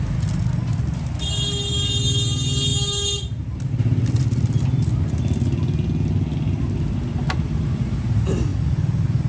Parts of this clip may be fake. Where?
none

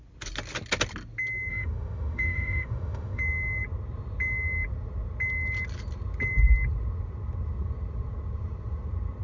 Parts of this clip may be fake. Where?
1.5-3.2 (autoencoder, DAC-VAE)

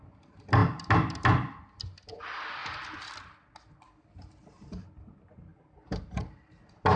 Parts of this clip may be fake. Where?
none

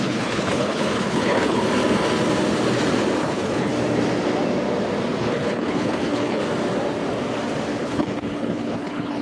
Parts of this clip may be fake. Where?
0.0-1.6 (codec, HILCodec); 3.2-3.7; 5.2-6.4; 7.8-9.2

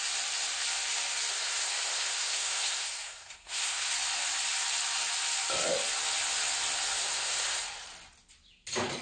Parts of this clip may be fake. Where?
1.3-3.9 (codec, SNAC); 7.0-7.6